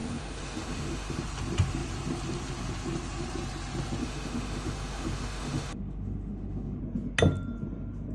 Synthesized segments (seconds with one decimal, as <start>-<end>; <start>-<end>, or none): 0.0-1.2; 4.0-6.8